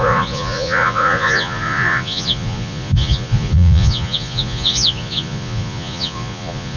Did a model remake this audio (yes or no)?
yes